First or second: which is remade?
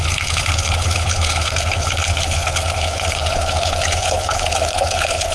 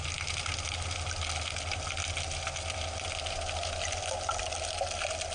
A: first